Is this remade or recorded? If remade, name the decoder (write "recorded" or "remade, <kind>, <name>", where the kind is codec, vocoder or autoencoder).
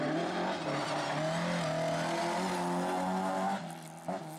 recorded